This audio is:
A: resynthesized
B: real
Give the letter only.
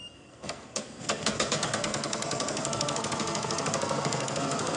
A